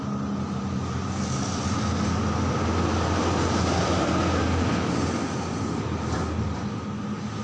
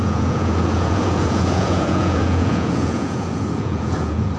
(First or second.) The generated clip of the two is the second